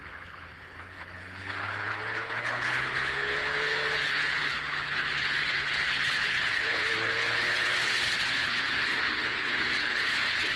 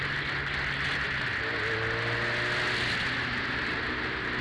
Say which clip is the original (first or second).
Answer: second